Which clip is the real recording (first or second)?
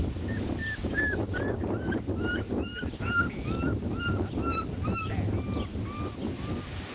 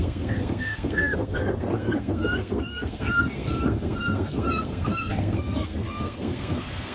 first